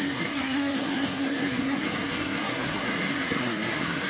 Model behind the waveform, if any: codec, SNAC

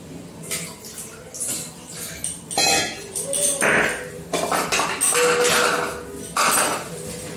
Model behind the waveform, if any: none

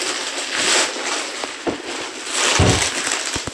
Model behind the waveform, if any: none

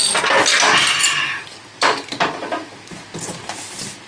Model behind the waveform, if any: none